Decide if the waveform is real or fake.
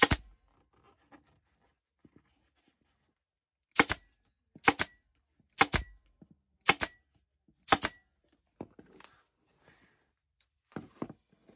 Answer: real